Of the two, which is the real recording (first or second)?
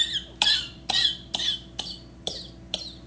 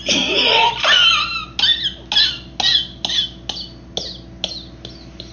second